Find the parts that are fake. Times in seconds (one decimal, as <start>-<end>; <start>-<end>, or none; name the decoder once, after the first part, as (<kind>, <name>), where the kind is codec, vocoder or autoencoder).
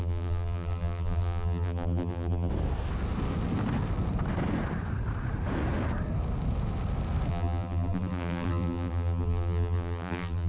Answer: 0.0-2.5 (vocoder, BigVGAN v2); 7.3-10.5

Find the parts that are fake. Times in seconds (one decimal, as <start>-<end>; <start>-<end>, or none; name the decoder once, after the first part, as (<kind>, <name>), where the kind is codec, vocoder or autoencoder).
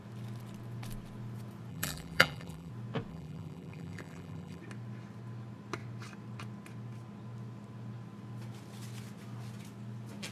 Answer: 1.7-2.7 (vocoder, BigVGAN v2); 3.1-4.6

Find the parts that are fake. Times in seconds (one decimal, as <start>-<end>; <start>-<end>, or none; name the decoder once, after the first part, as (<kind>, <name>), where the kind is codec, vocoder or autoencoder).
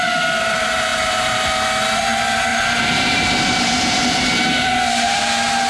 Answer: 0.9-1.5 (vocoder, BigVGAN v2); 2.5-5.2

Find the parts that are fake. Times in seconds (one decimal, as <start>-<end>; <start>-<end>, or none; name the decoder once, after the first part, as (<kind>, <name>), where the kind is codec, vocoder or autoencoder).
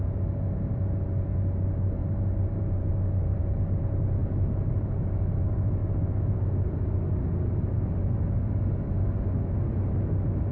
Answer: 2.0-3.4 (vocoder, BigVGAN v2); 4.2-4.9